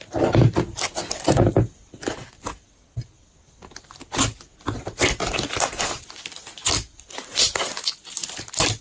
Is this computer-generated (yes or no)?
no